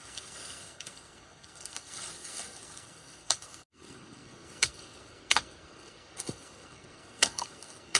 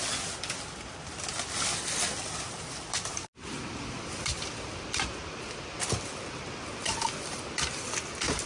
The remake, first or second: first